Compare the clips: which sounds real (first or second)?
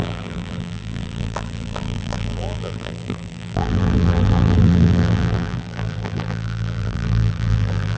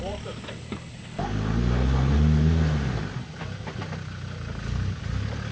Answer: second